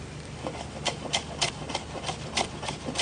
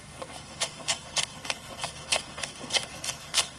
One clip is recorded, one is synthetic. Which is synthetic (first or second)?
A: second